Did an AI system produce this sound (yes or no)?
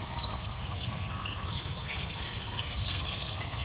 yes